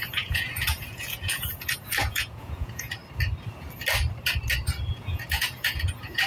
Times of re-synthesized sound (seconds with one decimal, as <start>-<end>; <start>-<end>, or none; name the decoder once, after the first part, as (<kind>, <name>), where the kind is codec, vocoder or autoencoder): 0.0-3.0 (vocoder, Vocos); 4.9-6.3